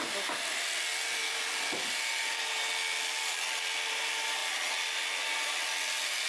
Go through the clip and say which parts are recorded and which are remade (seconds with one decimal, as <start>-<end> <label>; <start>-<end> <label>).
0.0-1.2 recorded; 1.2-2.6 remade; 2.6-6.3 recorded